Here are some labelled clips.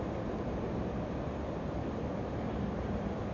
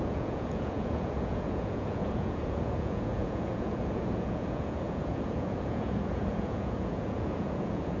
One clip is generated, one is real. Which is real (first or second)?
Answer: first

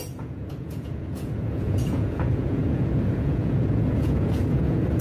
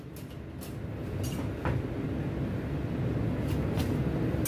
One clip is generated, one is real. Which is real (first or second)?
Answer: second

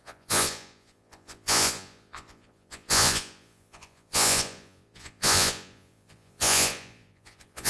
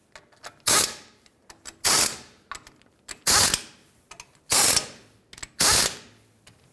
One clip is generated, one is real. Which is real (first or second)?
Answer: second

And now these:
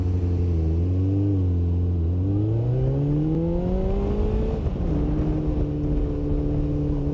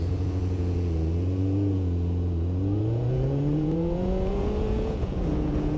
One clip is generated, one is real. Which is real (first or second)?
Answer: first